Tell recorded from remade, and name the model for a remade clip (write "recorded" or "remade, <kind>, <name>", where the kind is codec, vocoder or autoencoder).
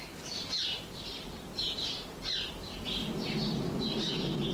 recorded